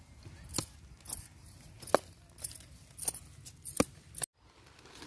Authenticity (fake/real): real